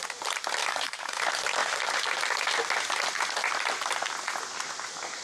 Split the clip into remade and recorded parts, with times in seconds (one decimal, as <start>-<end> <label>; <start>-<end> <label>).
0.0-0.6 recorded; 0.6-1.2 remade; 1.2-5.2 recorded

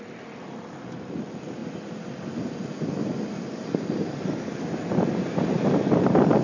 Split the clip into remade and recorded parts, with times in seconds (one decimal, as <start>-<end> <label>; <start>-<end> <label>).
0.0-6.4 recorded

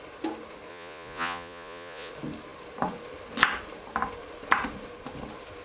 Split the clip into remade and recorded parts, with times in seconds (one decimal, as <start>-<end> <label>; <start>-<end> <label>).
0.0-0.7 recorded; 0.7-2.1 remade; 2.1-5.6 recorded

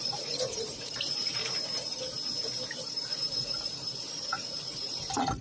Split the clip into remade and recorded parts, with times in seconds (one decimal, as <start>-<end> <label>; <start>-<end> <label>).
0.0-1.4 remade; 1.4-3.3 recorded; 3.3-5.4 remade

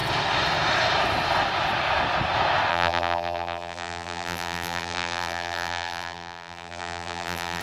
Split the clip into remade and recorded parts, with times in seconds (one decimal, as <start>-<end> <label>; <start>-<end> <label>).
0.0-2.7 recorded; 2.7-7.6 remade